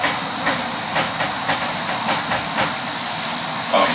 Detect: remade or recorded recorded